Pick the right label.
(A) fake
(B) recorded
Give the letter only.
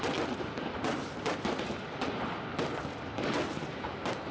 B